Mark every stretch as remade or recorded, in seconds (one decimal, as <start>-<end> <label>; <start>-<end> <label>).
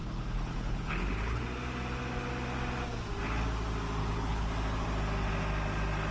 0.0-1.4 remade; 1.4-4.0 recorded; 4.0-4.5 remade; 4.5-6.1 recorded